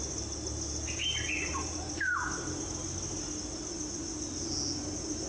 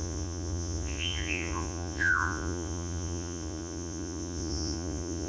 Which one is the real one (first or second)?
first